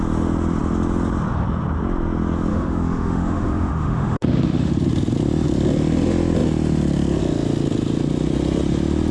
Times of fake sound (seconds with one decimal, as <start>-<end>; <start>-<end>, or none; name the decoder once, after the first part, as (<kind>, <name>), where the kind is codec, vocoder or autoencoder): 2.5-4.7 (autoencoder, DAC-VAE)